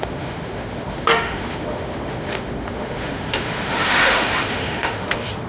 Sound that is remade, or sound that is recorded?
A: remade